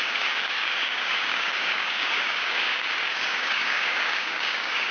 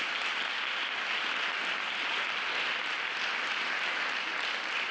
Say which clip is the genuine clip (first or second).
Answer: second